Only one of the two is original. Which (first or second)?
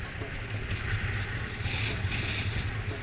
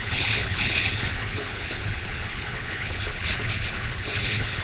first